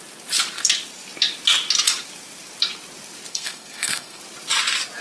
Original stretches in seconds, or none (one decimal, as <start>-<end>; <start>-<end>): 0.0-3.3; 4.2-5.0